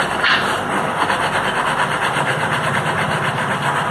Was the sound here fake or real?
real